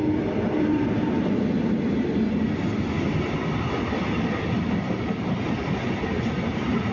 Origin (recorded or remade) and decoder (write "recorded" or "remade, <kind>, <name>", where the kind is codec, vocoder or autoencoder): recorded